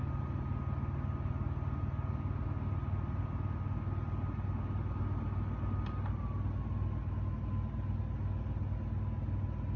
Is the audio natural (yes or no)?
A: yes